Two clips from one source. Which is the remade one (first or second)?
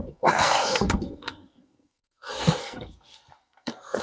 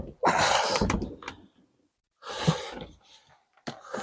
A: first